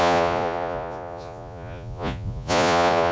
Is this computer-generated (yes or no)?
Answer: yes